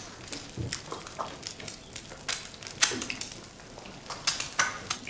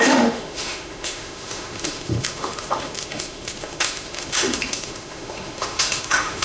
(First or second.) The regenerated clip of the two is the second